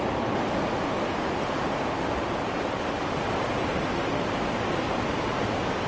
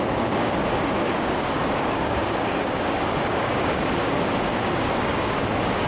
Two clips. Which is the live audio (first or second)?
first